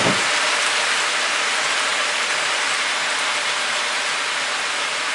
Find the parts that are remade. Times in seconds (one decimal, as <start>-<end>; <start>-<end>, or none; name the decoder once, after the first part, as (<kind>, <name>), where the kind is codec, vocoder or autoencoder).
none